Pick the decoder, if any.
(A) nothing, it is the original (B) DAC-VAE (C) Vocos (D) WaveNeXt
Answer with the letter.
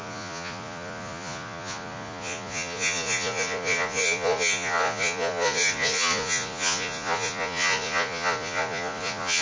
C